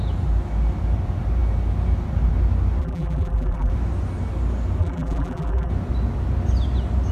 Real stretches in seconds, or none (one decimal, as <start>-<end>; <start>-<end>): 0.0-2.8; 3.7-4.8; 5.7-7.1